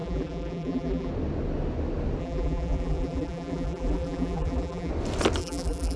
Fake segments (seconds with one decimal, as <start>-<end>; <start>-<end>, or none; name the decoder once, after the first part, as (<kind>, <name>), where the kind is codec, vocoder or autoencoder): 0.0-1.1 (vocoder, BigVGAN v2); 2.2-4.9; 5.4-6.0